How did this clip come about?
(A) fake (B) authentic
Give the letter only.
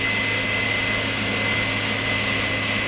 B